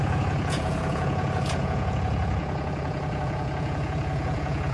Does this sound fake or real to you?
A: fake